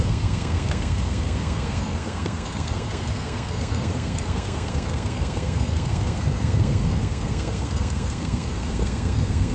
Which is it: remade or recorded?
remade